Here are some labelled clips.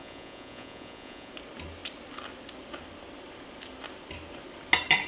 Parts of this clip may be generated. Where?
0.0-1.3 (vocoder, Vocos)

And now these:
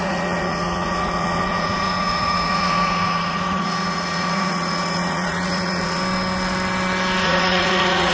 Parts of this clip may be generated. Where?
0.0-6.0 (vocoder, Vocos); 7.2-8.1

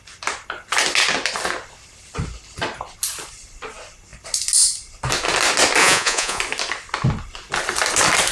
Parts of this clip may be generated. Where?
5.8-6.4 (vocoder, Vocos)

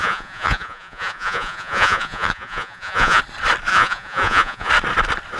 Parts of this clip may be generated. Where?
0.0-3.2 (vocoder, Vocos); 3.7-4.7

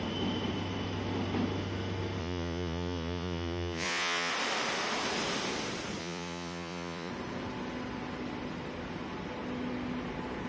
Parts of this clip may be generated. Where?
2.2-4.3 (vocoder, Vocos); 6.0-7.1

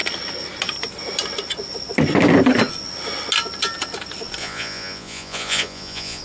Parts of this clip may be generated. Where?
4.4-6.2 (vocoder, Vocos)